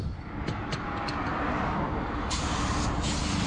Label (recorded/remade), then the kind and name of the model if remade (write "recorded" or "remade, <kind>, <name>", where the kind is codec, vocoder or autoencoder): recorded